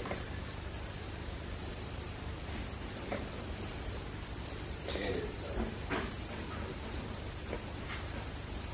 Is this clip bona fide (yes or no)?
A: no